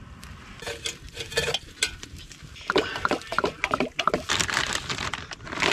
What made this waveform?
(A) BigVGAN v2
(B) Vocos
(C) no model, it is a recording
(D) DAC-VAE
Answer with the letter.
C